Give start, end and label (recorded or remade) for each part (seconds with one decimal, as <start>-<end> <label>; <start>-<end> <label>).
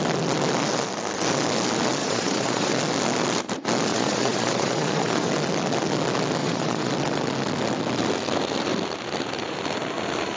0.0-2.0 recorded; 2.0-2.7 remade; 2.7-3.9 recorded; 3.9-5.3 remade; 5.3-6.4 recorded; 6.4-6.9 remade; 6.9-10.4 recorded